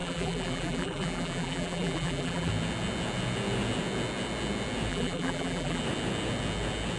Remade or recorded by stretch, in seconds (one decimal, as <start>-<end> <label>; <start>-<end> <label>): 0.0-2.5 remade; 2.5-4.9 recorded; 4.9-5.8 remade; 5.8-7.0 recorded